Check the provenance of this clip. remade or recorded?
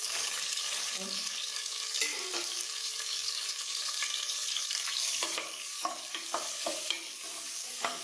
remade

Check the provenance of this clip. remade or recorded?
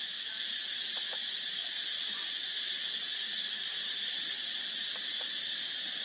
recorded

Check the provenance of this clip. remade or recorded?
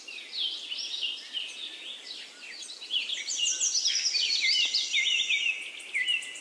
recorded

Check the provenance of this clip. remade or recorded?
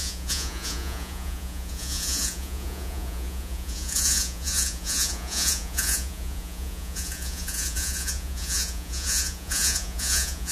remade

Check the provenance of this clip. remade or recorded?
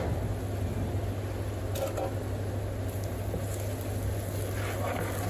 recorded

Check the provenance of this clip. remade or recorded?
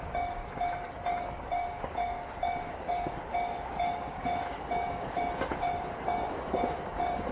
remade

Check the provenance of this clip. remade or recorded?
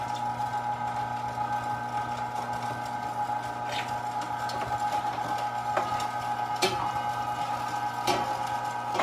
recorded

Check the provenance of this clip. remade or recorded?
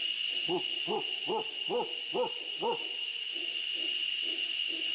recorded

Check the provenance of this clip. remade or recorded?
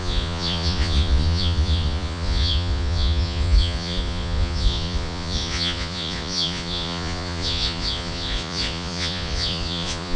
remade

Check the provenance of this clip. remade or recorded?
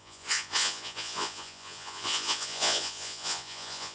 remade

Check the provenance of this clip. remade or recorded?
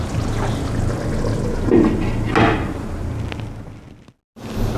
recorded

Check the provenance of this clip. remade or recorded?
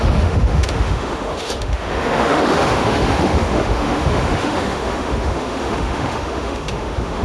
remade